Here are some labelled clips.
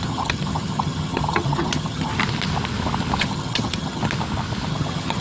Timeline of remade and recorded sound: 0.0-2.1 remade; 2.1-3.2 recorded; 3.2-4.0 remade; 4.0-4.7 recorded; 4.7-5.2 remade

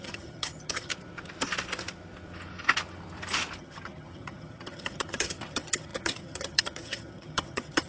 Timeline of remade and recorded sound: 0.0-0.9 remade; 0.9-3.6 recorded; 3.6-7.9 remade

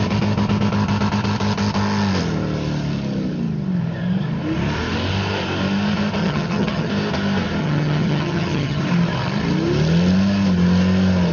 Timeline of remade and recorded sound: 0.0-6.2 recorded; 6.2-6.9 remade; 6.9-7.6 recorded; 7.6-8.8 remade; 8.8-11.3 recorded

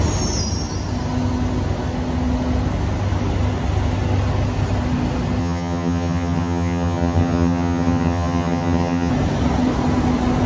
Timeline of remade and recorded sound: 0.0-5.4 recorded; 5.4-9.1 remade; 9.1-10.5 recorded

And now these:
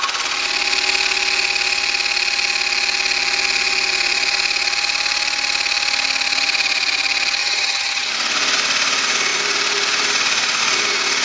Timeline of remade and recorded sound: 0.0-7.4 recorded; 7.4-8.1 remade; 8.1-11.2 recorded

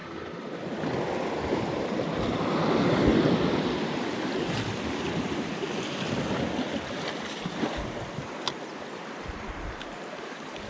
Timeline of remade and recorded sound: 0.0-10.7 recorded

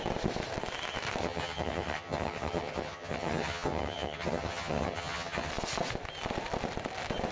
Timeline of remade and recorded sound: 0.0-1.2 recorded; 1.2-5.5 remade; 5.5-7.3 recorded